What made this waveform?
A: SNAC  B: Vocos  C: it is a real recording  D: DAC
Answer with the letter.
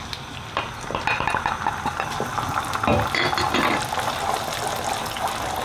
C